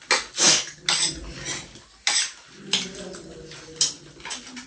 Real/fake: real